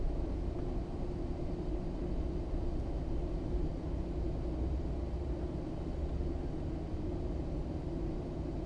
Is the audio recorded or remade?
recorded